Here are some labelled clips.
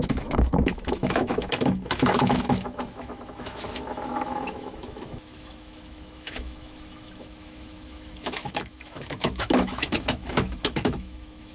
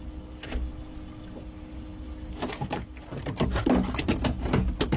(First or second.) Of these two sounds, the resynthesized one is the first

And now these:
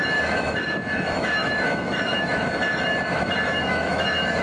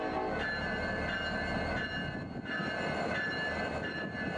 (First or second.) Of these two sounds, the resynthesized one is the first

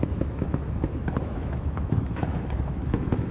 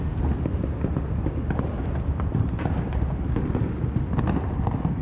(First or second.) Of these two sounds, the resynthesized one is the first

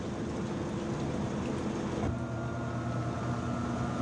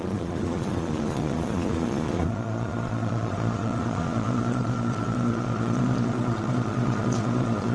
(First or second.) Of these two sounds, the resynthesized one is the second